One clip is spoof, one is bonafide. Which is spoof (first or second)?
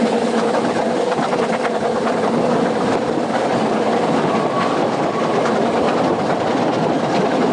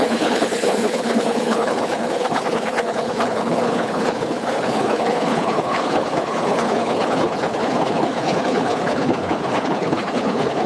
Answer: second